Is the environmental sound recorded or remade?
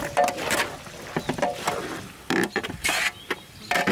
recorded